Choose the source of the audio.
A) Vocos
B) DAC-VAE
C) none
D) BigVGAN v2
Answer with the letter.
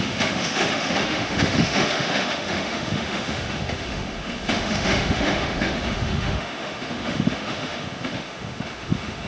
B